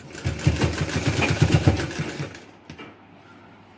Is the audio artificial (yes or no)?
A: no